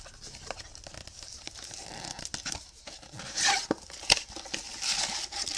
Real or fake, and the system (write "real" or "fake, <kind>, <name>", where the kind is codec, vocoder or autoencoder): real